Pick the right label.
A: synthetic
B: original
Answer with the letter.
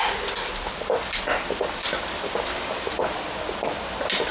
B